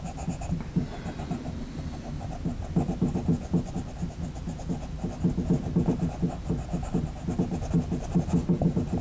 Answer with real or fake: real